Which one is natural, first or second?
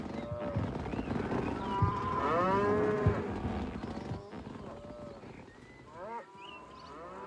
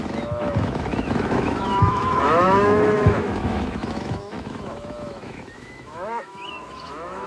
first